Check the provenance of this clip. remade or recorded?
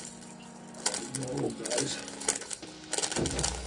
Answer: recorded